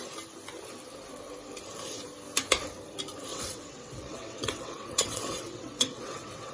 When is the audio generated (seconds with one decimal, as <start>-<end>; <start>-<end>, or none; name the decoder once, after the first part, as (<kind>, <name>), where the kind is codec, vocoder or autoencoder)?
3.3-6.5 (vocoder, WaveNeXt)